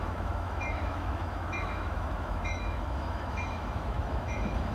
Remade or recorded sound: remade